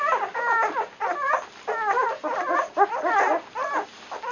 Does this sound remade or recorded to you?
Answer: recorded